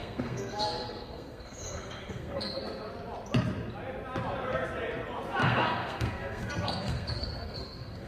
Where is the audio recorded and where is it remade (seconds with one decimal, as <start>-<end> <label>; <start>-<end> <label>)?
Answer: 0.0-2.6 remade; 2.6-5.4 recorded; 5.4-8.1 remade